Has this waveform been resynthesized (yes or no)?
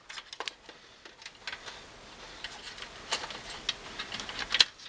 no